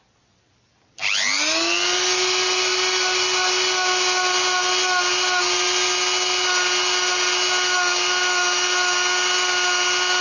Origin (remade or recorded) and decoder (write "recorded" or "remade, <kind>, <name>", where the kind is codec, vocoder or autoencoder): recorded